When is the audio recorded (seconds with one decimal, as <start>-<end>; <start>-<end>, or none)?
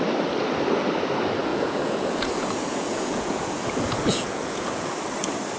0.0-1.5; 4.9-5.6